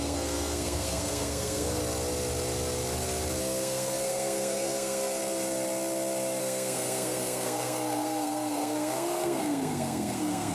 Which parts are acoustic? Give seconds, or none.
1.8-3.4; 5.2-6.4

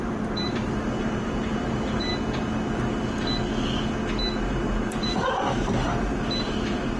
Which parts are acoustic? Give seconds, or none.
2.1-4.4

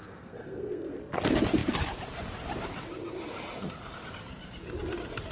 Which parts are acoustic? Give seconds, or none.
1.0-5.3